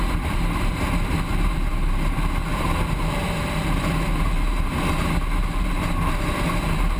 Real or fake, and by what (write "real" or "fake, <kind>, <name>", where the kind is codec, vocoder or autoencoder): fake, vocoder, BigVGAN v2